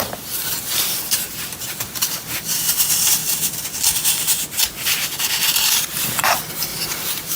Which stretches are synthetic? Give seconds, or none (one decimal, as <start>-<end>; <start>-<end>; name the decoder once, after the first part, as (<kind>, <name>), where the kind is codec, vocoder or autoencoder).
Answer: 6.7-7.4 (vocoder, BigVGAN v2)